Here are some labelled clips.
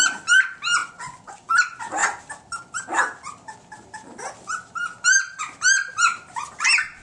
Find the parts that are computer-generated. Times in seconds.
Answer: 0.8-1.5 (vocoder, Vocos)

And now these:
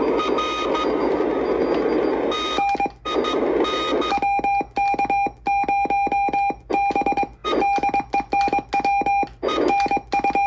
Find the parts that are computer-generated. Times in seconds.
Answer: none

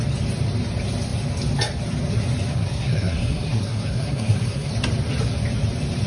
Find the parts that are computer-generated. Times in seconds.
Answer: 2.5-4.7 (codec, SNAC)